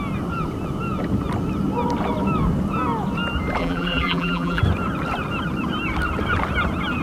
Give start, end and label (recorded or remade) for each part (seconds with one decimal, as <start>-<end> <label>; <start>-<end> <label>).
0.0-3.6 recorded; 3.6-4.6 remade; 4.6-7.0 recorded